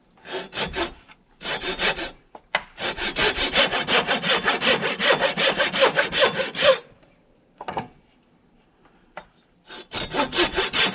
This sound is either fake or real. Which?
real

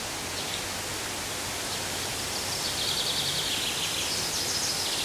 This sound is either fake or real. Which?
real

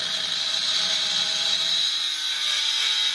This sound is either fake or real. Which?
real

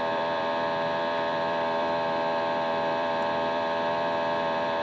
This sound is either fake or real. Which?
fake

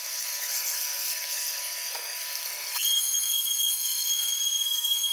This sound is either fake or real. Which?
fake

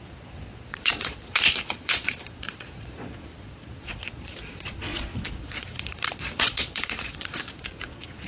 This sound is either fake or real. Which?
fake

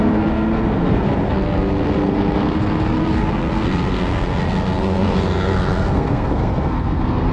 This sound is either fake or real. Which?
fake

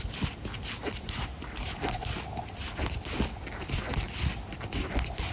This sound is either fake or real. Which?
real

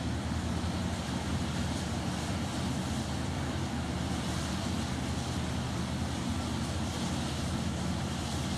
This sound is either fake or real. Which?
real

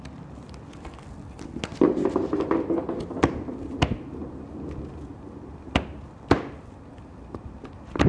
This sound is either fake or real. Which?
real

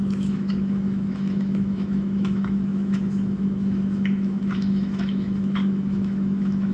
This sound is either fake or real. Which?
fake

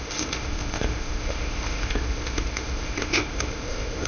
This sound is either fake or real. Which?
fake